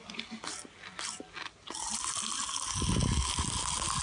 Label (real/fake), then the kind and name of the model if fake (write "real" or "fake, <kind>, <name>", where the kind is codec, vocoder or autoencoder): real